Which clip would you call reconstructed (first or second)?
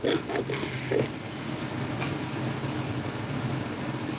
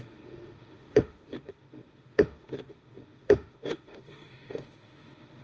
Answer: second